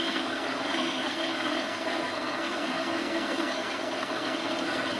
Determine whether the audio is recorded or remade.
remade